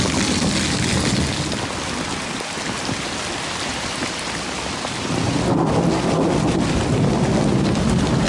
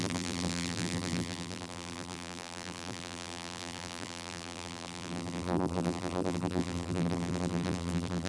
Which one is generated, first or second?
second